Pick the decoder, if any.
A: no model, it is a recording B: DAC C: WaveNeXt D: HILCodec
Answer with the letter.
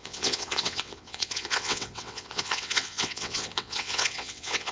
C